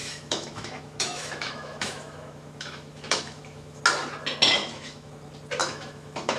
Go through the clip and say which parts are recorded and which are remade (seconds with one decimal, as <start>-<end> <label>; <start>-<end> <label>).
0.0-3.8 remade; 3.8-4.6 recorded; 4.6-5.1 remade; 5.1-5.6 recorded; 5.6-6.4 remade